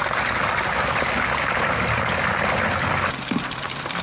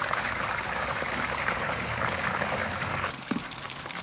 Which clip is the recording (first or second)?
first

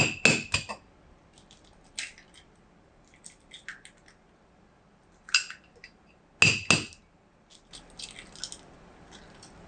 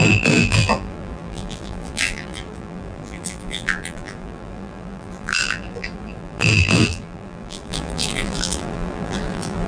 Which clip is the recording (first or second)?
first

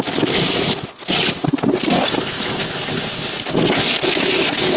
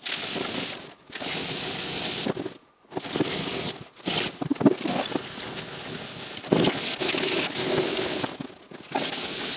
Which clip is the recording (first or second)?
second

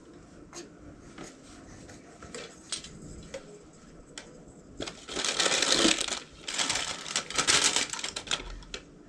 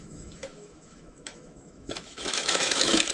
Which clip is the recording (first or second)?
first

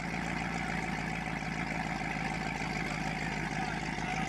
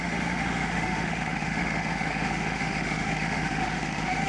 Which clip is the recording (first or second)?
first